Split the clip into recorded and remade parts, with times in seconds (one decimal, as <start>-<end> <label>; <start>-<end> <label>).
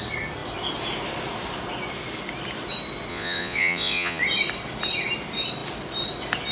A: 0.0-3.1 recorded; 3.1-4.2 remade; 4.2-6.5 recorded